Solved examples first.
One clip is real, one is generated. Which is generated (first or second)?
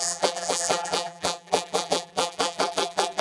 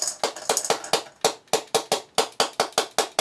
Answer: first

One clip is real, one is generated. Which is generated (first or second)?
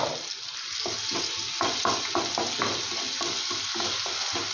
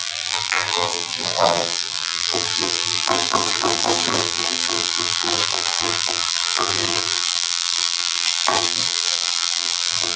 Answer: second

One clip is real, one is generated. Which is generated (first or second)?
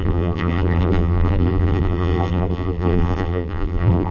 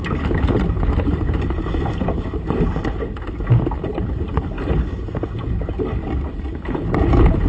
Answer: first